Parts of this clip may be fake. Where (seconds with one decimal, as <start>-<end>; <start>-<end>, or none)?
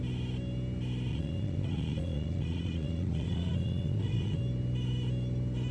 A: 1.1-4.4